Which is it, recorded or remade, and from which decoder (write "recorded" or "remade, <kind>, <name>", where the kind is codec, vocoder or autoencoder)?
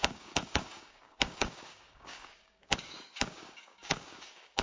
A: remade, codec, DAC